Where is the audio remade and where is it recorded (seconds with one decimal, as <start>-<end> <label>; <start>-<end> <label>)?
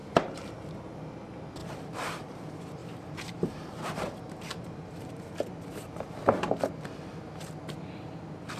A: 0.0-0.5 remade; 0.5-1.6 recorded; 1.6-2.4 remade; 2.4-2.8 recorded; 2.8-5.1 remade; 5.1-8.6 recorded